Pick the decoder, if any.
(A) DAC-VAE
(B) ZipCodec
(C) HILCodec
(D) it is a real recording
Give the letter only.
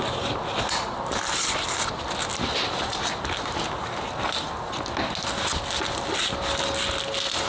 D